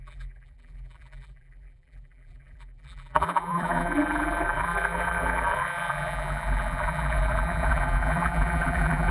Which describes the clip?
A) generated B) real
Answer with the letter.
A